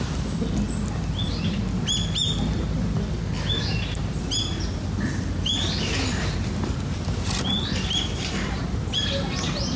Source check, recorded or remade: recorded